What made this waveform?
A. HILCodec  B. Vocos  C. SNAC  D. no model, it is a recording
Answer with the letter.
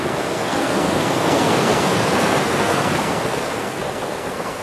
C